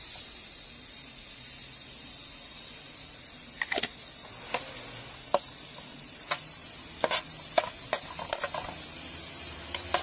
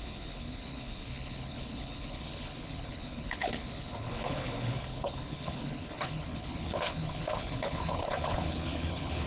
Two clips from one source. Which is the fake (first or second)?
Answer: second